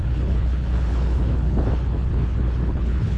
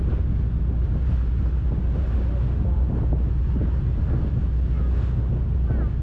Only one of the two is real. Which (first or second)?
second